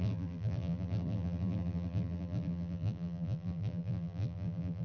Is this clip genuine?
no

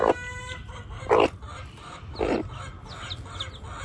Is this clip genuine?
yes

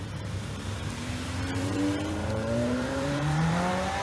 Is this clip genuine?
no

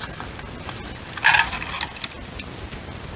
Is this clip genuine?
yes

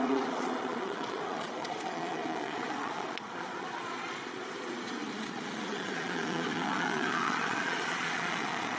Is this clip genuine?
no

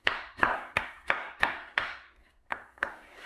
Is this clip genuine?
no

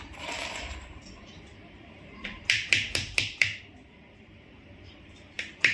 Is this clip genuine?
no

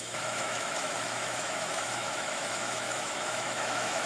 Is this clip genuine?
no